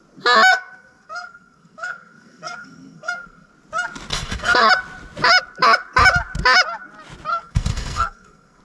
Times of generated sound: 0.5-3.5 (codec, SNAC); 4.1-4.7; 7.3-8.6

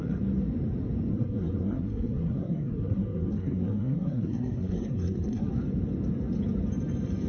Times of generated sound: 1.1-5.5 (codec, SNAC)

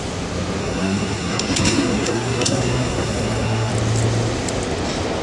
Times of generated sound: 0.6-3.7 (codec, SNAC)

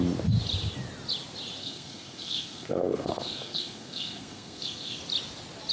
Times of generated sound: 1.6-5.0 (codec, SNAC)

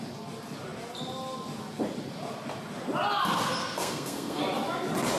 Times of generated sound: 3.6-4.4 (codec, SNAC)